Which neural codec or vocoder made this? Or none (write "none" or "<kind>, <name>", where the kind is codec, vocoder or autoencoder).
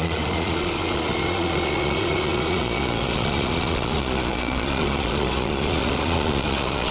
vocoder, Vocos